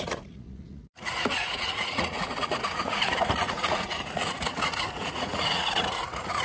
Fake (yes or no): yes